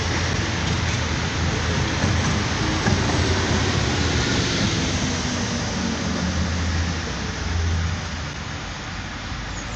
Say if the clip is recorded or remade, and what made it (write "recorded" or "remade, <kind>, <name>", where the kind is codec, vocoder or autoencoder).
recorded